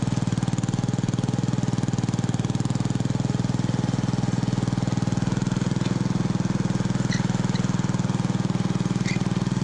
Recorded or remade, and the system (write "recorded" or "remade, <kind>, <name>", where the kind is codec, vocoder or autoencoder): recorded